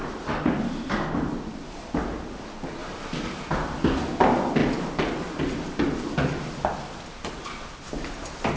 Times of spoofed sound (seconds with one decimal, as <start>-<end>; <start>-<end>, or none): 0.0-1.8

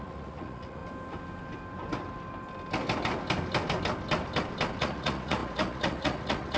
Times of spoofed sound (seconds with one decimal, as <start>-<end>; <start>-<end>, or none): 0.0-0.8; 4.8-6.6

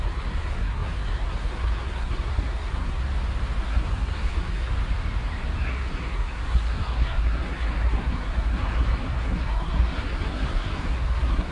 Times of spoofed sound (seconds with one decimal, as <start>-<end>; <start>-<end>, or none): 0.0-3.0; 3.6-4.7; 5.6-11.5

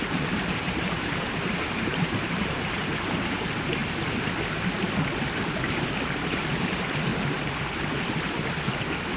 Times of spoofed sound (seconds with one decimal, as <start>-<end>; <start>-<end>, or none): 0.0-3.8; 6.3-7.1

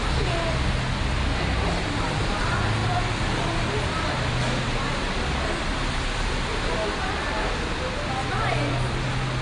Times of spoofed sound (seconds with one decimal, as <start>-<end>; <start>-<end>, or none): none

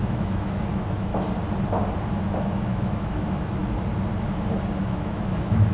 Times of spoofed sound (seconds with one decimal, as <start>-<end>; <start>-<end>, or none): 0.0-1.1; 2.1-3.6; 4.8-5.7